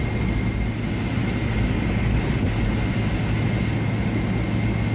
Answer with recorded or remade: recorded